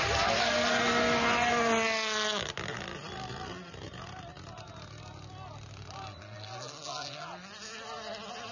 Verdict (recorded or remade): recorded